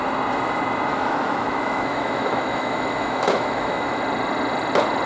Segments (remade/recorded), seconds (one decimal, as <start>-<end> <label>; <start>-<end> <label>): 0.0-0.9 recorded; 0.9-4.0 remade; 4.0-5.1 recorded